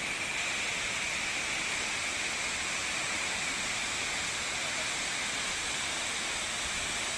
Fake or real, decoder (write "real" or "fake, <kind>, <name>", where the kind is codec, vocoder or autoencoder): real